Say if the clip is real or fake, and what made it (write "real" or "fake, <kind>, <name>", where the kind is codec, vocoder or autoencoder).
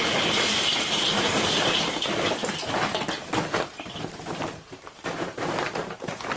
fake, vocoder, BigVGAN v2